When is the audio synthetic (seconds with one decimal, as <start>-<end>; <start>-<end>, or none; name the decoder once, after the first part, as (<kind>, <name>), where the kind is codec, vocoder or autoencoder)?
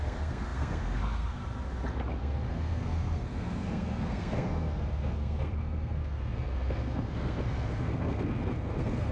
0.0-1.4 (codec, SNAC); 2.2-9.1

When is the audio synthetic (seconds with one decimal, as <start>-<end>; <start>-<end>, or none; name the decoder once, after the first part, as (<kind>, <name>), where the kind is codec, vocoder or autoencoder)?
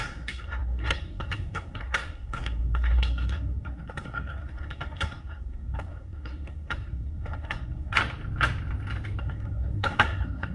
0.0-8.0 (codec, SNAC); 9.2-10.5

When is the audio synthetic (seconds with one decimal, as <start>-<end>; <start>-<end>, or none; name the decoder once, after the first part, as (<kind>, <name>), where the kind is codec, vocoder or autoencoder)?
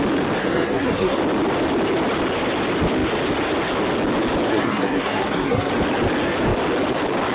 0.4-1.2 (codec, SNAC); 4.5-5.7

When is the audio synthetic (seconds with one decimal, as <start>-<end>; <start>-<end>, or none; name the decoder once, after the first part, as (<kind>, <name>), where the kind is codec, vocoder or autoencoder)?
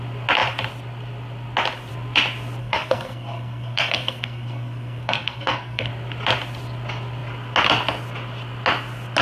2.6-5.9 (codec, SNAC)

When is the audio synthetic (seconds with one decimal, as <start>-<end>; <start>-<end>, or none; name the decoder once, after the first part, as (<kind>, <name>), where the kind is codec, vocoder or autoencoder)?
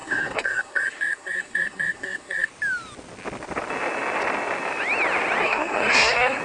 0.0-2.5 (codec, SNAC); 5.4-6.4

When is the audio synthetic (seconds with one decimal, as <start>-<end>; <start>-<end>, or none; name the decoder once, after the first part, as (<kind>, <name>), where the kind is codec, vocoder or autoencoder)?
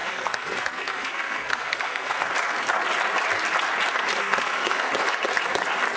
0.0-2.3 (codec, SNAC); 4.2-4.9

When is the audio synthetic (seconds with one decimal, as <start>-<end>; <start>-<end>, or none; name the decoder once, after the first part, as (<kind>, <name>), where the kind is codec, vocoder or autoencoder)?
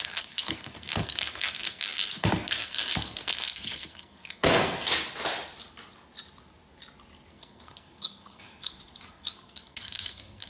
0.0-4.9 (codec, SNAC); 7.3-10.5